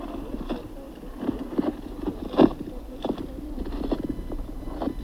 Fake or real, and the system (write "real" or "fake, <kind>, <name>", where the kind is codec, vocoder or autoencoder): real